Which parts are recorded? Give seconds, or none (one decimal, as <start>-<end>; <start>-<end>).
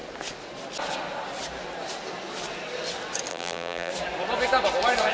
0.0-3.3; 3.9-5.1